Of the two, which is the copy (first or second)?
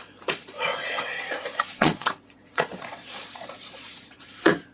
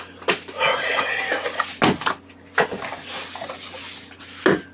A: first